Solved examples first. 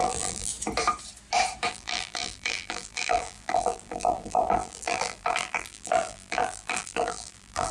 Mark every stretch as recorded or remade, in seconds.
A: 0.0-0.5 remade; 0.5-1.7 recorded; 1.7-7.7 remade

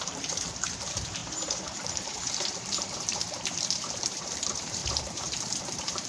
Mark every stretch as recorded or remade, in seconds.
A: 0.0-6.1 remade

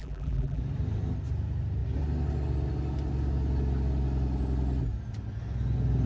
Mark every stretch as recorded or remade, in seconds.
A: 0.0-0.6 remade; 0.6-6.1 recorded

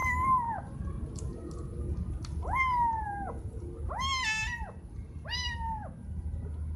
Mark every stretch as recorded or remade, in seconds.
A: 0.0-6.8 recorded